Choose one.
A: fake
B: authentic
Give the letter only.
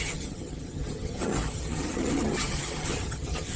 A